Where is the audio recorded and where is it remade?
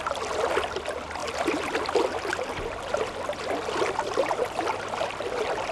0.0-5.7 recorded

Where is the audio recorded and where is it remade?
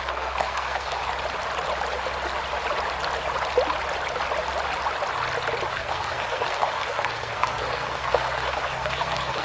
0.0-1.0 remade; 1.0-5.7 recorded; 5.7-9.4 remade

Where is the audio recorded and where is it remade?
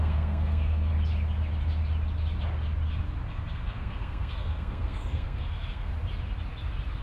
0.0-0.9 remade; 0.9-3.3 recorded; 3.3-5.9 remade; 5.9-7.0 recorded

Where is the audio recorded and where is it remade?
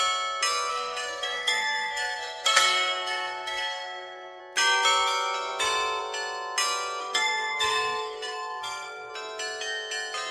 0.0-0.7 recorded; 0.7-4.4 remade; 4.4-7.0 recorded; 7.0-9.1 remade; 9.1-10.3 recorded